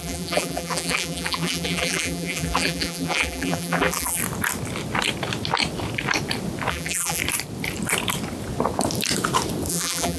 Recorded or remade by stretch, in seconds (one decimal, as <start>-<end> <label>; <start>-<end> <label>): 0.0-4.2 remade; 4.2-6.7 recorded; 6.7-7.2 remade; 7.2-9.7 recorded; 9.7-10.2 remade